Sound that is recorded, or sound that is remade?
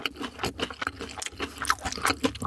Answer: recorded